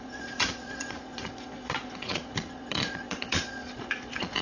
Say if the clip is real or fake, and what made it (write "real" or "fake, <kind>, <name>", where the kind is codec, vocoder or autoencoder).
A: fake, vocoder, Vocos